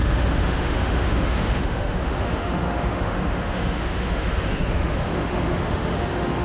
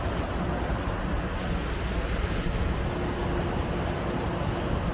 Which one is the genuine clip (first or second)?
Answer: second